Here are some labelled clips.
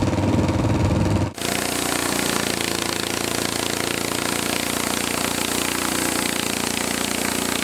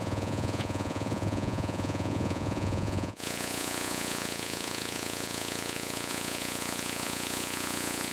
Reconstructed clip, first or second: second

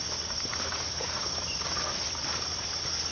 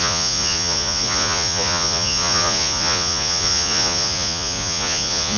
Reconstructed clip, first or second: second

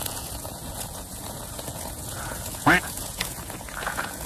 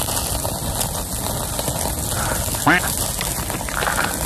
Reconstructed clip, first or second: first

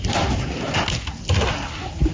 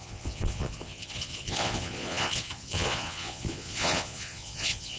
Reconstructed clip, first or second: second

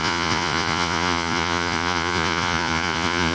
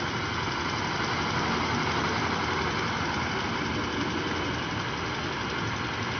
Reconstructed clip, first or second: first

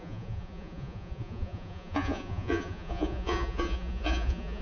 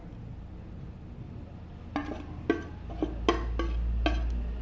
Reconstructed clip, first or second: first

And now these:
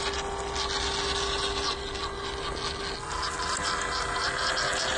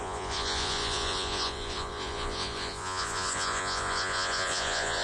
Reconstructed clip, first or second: second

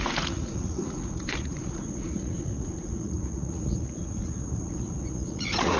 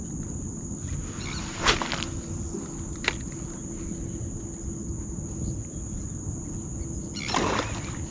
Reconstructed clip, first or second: first